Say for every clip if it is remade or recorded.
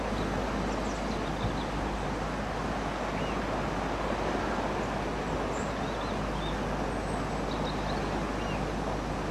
recorded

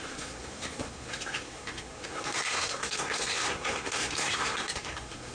remade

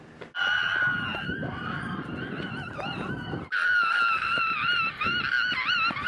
recorded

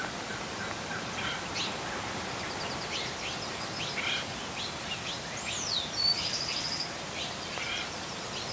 recorded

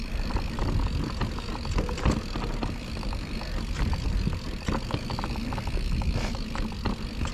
recorded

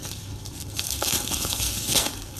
remade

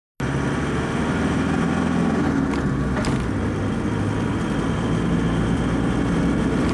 recorded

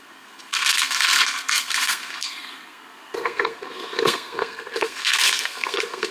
remade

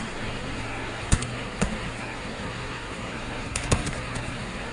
remade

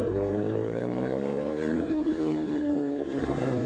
remade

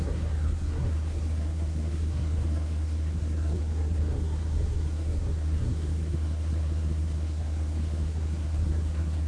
remade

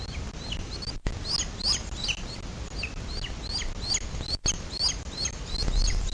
recorded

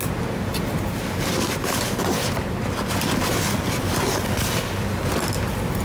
recorded